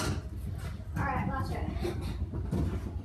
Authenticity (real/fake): real